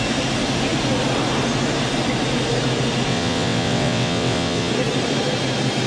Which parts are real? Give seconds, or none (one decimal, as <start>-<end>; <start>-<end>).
0.0-3.1; 4.7-5.9